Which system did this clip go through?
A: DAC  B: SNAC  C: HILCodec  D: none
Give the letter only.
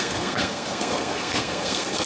B